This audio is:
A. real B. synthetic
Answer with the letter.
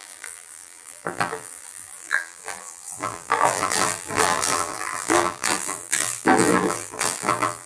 B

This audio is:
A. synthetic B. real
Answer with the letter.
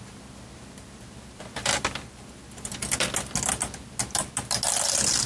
B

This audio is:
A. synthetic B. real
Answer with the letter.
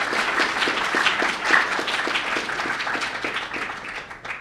B